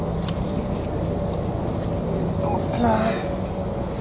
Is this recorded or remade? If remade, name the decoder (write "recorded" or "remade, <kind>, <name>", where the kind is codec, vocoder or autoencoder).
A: recorded